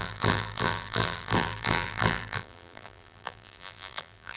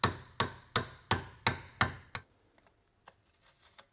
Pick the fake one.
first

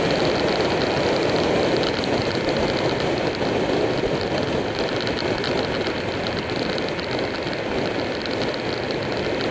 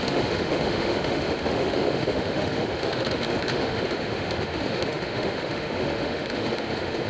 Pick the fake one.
second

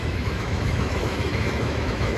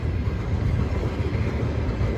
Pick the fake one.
first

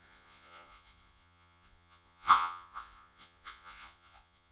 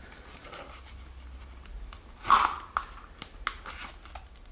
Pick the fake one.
first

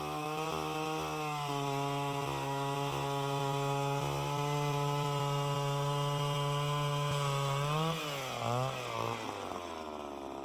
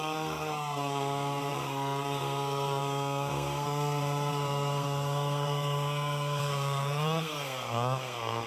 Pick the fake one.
second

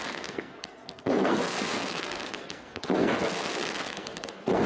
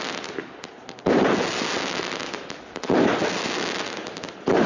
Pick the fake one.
first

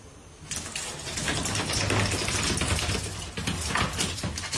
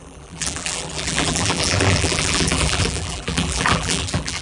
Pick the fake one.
second